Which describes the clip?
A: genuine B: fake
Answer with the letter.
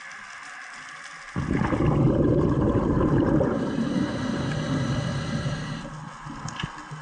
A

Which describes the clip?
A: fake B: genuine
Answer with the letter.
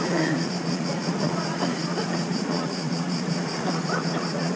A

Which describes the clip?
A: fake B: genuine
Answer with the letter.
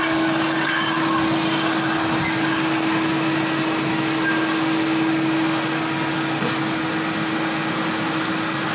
B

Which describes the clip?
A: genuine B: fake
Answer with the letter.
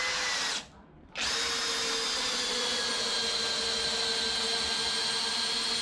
A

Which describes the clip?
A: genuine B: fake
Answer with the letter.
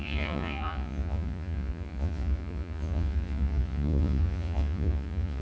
B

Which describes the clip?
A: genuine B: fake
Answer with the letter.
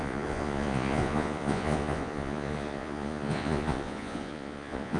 B